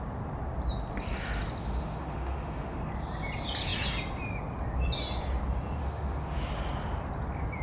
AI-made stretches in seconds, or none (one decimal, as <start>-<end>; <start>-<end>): 1.6-2.8; 5.8-6.5